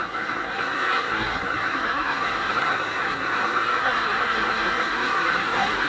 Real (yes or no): no